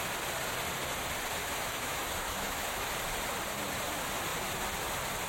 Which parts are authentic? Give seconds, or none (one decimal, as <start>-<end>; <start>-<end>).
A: 0.0-1.4; 2.9-5.3